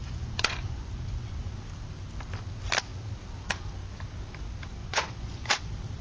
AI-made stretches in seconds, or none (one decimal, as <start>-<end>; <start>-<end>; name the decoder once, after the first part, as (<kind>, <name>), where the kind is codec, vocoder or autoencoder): 0.0-1.5 (vocoder, Vocos); 4.8-5.6